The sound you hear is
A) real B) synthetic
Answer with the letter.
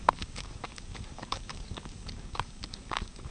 B